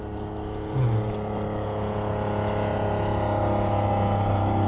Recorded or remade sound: recorded